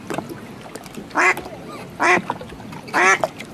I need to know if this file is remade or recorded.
recorded